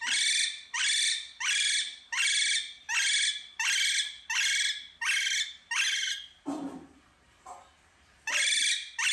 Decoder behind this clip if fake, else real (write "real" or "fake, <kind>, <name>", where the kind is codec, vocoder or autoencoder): real